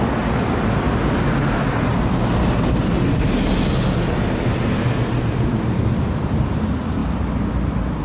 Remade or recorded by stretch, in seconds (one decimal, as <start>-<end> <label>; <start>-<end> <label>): 0.0-8.0 recorded